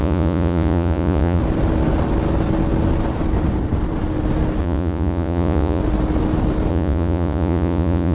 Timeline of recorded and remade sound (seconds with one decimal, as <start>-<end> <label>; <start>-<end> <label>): 0.0-1.4 remade; 1.4-4.6 recorded; 4.6-5.8 remade; 5.8-6.7 recorded; 6.7-8.1 remade